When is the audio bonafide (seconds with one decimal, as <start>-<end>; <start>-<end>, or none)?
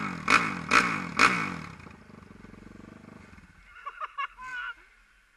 0.0-5.4